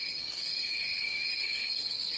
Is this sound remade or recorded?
remade